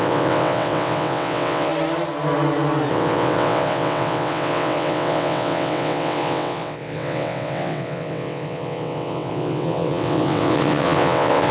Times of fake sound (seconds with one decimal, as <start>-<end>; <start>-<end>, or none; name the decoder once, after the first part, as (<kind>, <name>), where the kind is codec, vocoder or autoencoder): 0.0-1.7 (vocoder, WaveNeXt); 2.9-11.5